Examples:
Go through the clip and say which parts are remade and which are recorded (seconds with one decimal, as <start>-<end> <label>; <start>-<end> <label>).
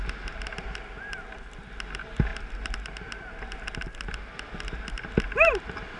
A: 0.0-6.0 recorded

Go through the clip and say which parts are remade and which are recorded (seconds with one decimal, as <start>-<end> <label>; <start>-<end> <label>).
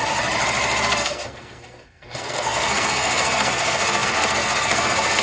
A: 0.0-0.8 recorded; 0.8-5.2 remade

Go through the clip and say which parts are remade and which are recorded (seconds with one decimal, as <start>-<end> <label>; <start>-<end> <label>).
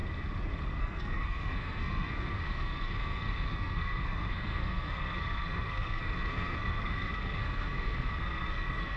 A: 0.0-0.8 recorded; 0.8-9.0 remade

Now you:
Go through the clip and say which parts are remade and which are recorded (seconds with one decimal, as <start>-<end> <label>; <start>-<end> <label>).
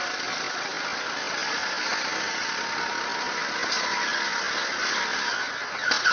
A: 0.0-6.1 recorded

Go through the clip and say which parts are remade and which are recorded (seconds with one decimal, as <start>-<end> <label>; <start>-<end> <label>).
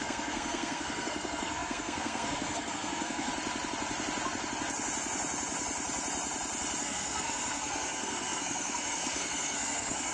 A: 0.0-3.3 remade; 3.3-6.8 recorded; 6.8-10.1 remade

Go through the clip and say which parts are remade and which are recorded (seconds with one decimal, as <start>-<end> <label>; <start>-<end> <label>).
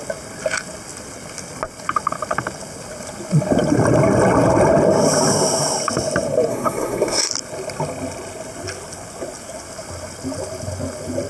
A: 0.0-6.5 recorded; 6.5-7.3 remade; 7.3-11.3 recorded